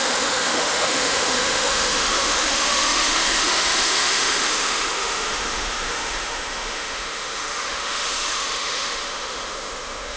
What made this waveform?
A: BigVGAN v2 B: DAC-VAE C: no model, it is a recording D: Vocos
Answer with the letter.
B